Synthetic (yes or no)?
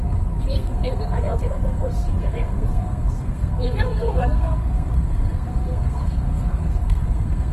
yes